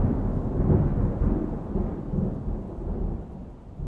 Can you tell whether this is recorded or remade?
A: recorded